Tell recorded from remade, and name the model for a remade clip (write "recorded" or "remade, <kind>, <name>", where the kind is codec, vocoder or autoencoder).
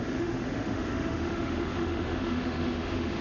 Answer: remade, autoencoder, DAC-VAE